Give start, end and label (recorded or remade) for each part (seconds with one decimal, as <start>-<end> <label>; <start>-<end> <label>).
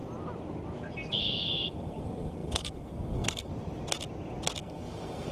0.0-1.1 recorded; 1.1-3.5 remade; 3.5-4.6 recorded; 4.6-5.3 remade